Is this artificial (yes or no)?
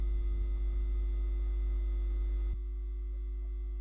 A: no